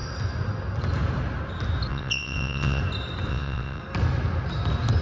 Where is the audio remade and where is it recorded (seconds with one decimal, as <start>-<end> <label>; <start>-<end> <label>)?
0.0-1.9 recorded; 1.9-2.8 remade; 2.8-3.3 recorded; 3.3-3.8 remade; 3.8-5.0 recorded